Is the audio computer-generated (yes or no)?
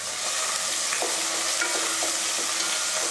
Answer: no